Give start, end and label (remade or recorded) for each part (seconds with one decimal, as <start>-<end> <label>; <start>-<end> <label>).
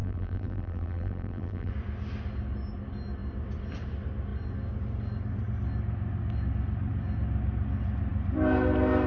0.0-1.7 remade; 1.7-9.1 recorded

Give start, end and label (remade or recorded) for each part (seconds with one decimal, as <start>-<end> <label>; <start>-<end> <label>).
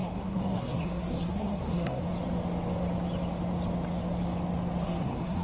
0.0-2.0 remade; 2.0-4.8 recorded; 4.8-5.4 remade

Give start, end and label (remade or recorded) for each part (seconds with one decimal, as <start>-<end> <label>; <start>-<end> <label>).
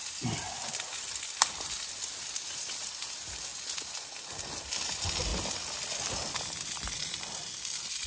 0.0-5.3 recorded; 5.3-7.5 remade; 7.5-8.1 recorded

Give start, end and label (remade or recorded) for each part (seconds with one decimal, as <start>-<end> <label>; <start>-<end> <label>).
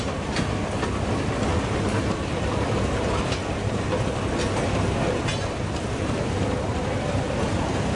0.0-8.0 recorded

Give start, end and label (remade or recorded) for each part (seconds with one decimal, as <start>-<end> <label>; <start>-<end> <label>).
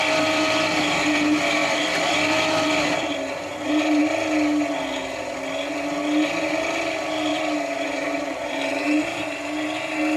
0.0-7.3 recorded; 7.3-9.3 remade; 9.3-10.2 recorded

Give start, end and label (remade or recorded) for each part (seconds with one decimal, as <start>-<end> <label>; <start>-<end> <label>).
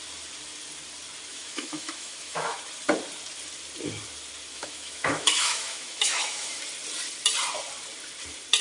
0.0-1.3 recorded; 1.3-2.6 remade; 2.6-4.5 recorded; 4.5-6.6 remade; 6.6-8.6 recorded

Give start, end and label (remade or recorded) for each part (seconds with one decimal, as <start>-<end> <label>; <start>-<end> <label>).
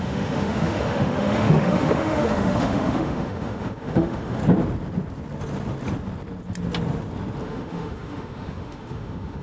0.0-4.4 remade; 4.4-7.4 recorded; 7.4-9.4 remade